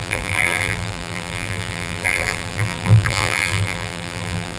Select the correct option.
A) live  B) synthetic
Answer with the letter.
B